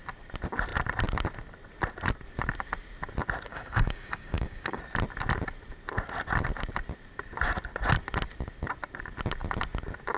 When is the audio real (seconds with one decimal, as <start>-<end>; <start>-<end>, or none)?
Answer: 0.0-3.5; 4.8-10.2